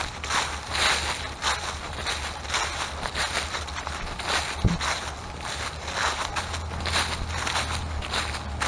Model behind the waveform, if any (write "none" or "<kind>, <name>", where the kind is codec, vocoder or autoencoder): none